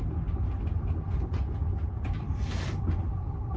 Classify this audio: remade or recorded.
recorded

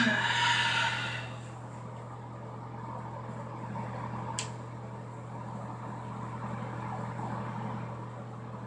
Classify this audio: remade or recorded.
recorded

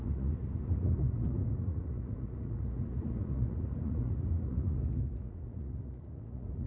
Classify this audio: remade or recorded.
remade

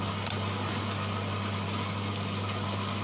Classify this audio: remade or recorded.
recorded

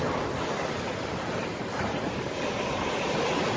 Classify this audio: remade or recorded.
recorded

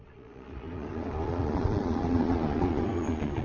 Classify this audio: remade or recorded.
remade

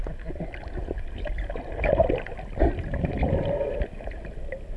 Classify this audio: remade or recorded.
recorded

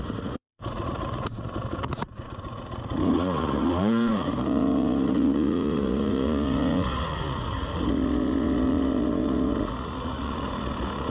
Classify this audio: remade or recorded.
remade